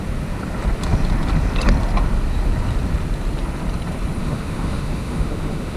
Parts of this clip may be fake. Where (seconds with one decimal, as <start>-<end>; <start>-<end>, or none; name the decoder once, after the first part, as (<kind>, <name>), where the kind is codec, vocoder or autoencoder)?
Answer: 4.2-5.8 (autoencoder, DAC-VAE)